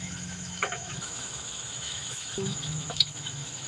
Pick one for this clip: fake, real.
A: fake